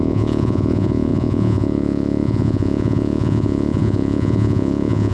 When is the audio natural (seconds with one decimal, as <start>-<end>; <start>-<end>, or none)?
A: none

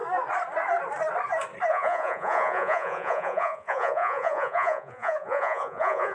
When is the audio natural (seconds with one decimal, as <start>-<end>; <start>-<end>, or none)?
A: 0.0-1.7

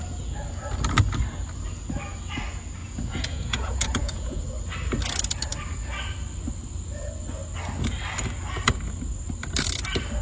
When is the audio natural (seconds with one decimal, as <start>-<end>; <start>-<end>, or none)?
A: 0.0-2.8; 4.4-10.2

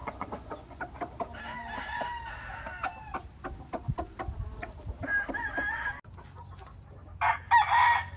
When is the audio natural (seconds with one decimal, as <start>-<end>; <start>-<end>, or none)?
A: 0.8-8.2